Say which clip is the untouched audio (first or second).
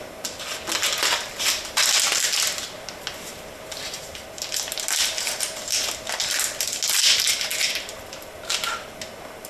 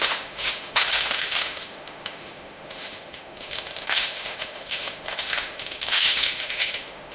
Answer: first